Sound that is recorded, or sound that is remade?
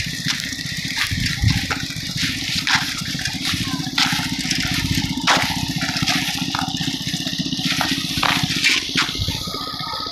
recorded